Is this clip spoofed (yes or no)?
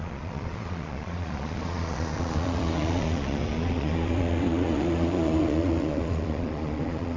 yes